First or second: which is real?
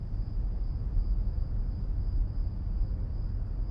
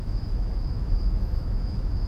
first